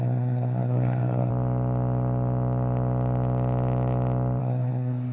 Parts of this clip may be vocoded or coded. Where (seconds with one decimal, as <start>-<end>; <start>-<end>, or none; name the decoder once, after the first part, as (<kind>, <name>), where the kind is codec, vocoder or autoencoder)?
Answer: 0.0-1.3 (codec, SNAC); 4.4-5.1